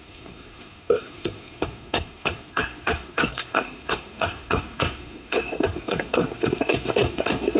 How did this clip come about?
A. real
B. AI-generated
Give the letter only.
B